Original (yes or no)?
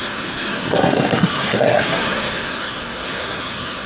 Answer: no